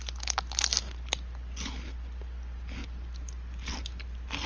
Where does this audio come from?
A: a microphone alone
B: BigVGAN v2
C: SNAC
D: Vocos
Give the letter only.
A